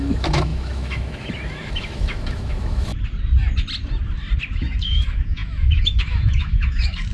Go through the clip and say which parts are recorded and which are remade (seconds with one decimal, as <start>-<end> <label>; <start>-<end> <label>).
0.0-2.9 remade; 2.9-4.5 recorded; 4.5-7.1 remade